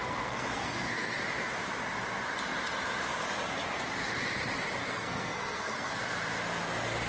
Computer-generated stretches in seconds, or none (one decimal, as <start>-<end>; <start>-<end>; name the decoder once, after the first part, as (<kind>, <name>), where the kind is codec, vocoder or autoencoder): 0.0-1.2 (codec, SNAC); 4.8-6.0